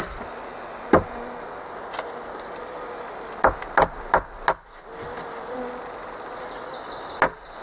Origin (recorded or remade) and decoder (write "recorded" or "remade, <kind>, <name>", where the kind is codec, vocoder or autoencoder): recorded